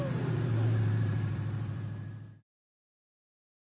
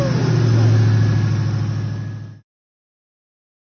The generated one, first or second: first